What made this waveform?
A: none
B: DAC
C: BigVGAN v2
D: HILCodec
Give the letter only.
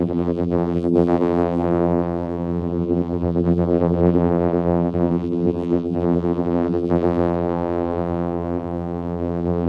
C